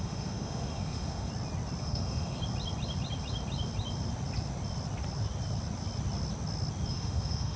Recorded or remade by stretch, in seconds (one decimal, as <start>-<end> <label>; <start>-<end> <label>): 0.0-1.3 remade; 1.3-1.8 recorded; 1.8-2.4 remade; 2.4-6.9 recorded; 6.9-7.6 remade